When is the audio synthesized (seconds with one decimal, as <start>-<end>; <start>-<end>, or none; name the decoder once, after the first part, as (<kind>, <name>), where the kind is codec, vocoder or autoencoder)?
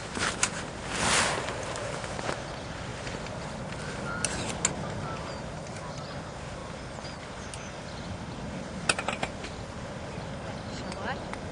none